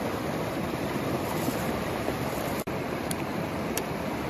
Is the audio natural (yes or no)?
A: no